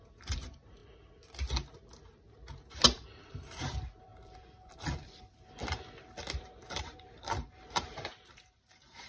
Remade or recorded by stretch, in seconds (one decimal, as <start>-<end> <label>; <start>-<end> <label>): 0.0-0.8 remade; 0.8-3.3 recorded; 3.3-4.1 remade; 4.1-6.4 recorded; 6.4-9.1 remade